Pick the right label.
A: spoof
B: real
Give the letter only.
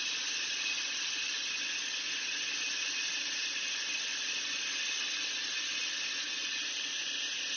B